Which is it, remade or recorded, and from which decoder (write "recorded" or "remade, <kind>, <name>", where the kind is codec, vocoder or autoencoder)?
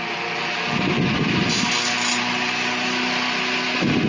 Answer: recorded